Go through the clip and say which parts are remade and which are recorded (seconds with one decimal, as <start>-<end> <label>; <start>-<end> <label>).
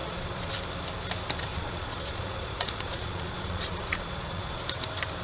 0.0-0.5 remade; 0.5-1.5 recorded; 1.5-4.6 remade; 4.6-5.2 recorded